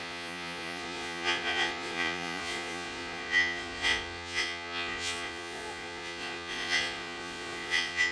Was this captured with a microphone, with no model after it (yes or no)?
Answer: no